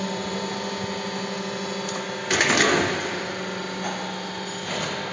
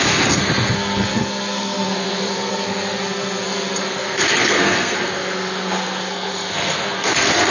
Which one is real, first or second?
first